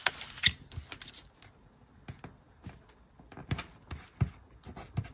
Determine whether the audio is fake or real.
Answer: real